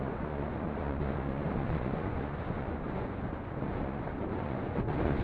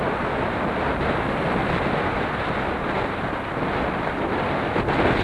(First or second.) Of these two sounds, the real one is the second